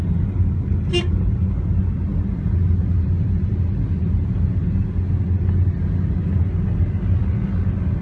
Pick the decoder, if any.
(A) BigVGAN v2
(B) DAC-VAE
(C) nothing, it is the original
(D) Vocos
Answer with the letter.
C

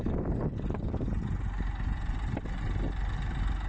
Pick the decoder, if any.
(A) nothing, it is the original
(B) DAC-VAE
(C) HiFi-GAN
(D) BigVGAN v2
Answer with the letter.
A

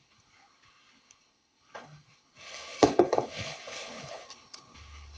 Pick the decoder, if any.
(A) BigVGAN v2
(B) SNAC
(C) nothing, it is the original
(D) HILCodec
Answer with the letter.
D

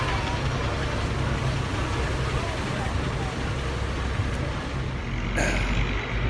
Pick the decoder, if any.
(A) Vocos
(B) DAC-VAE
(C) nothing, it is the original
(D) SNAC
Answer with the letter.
C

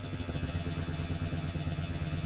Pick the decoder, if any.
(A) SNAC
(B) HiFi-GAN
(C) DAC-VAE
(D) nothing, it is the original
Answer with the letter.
B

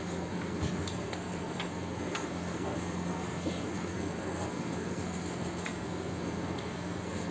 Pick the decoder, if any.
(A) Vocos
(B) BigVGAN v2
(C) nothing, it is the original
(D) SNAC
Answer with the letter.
D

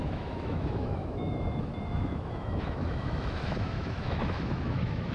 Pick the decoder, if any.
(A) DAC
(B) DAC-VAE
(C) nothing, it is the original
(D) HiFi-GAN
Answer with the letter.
B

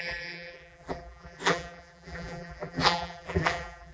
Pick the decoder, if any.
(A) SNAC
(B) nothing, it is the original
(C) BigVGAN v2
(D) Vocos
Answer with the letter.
C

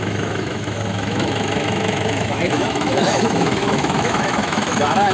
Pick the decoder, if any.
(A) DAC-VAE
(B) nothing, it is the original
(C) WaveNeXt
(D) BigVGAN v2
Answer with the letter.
A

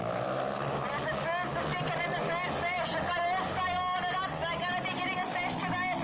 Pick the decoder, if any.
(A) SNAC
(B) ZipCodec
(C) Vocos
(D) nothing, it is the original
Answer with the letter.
D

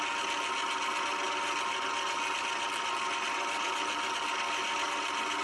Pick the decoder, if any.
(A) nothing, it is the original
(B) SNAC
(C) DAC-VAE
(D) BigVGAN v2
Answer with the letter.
A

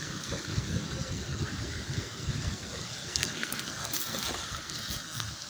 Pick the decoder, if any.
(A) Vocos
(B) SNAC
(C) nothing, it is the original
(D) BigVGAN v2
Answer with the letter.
B